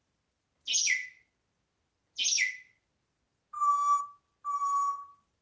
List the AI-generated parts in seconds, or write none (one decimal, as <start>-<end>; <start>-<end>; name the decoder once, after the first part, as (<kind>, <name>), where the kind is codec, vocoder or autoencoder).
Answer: none